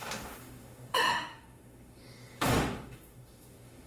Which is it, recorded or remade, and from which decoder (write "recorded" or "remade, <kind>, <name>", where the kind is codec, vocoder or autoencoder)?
remade, autoencoder, DAC-VAE